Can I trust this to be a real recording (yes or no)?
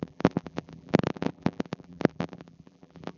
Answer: no